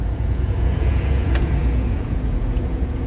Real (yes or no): no